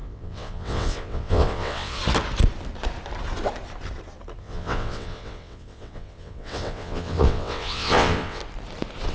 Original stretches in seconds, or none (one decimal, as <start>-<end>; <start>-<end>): 2.0-4.4; 8.4-9.1